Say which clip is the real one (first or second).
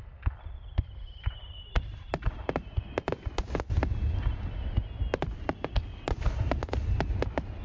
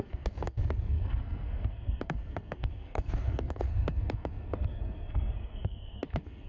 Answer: first